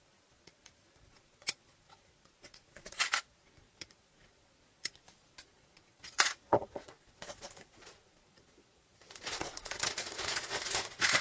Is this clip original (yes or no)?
no